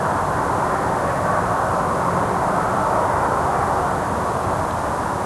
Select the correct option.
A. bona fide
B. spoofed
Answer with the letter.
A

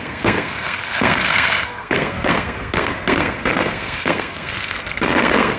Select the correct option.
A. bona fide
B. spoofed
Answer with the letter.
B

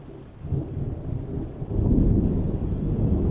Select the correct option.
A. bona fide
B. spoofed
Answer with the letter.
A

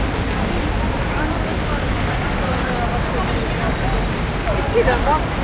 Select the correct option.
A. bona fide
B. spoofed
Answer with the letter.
A